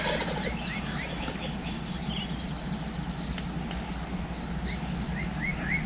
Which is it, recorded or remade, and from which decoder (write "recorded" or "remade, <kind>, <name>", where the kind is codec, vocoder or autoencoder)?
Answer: recorded